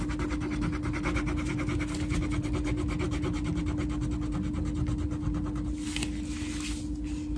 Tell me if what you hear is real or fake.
real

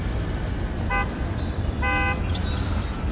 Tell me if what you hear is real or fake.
real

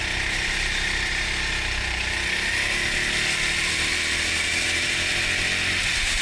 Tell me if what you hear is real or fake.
real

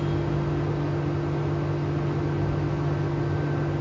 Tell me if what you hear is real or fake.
real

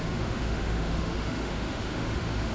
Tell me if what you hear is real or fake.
fake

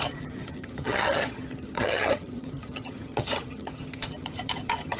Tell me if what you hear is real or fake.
fake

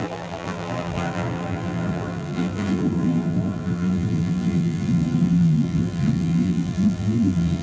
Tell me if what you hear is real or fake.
fake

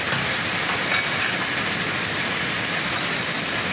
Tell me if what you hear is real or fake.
real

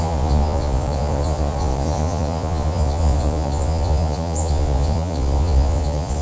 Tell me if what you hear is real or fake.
fake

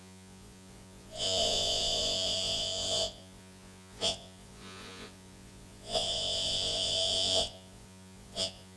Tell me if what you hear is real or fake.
fake